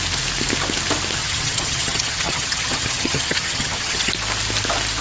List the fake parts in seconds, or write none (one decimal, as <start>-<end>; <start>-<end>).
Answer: 1.2-4.1